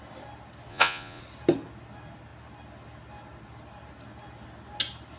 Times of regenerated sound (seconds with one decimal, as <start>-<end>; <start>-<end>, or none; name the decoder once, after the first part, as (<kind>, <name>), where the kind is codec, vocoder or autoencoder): 0.7-1.2 (vocoder, Vocos)

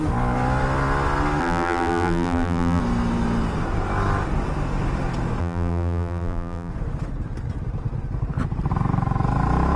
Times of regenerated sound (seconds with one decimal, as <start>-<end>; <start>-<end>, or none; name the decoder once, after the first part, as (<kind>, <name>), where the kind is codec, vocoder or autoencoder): 1.4-2.8 (vocoder, BigVGAN v2); 5.4-6.7

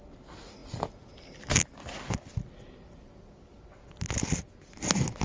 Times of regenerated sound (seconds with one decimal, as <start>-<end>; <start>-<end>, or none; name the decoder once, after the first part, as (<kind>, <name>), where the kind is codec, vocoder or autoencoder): none

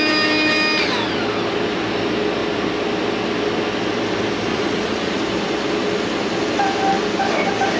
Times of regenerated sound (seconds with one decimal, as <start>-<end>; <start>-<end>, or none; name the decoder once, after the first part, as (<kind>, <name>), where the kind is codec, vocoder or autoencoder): 4.5-5.2 (vocoder, Vocos)